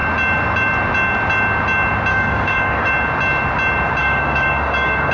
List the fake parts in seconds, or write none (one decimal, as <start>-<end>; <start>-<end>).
2.1-2.9; 4.0-5.1